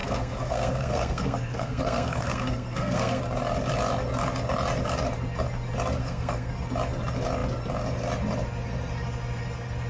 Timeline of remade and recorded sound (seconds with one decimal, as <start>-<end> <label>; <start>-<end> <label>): 0.0-3.2 remade; 3.2-6.0 recorded; 6.0-6.5 remade; 6.5-9.9 recorded